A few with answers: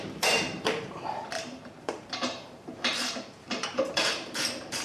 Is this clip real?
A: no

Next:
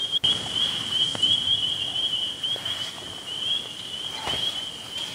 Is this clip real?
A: no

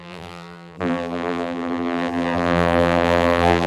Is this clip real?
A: no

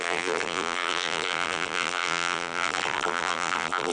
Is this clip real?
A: no